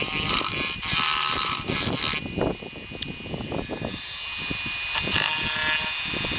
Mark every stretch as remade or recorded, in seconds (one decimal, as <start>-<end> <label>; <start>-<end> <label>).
0.0-2.0 remade; 2.0-6.4 recorded